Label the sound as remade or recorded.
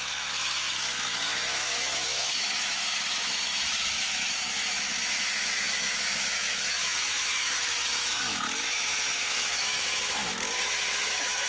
remade